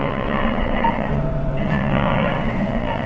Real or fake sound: fake